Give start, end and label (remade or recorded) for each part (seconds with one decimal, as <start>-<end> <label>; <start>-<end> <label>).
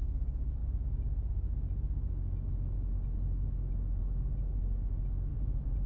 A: 0.0-5.3 recorded; 5.3-5.9 remade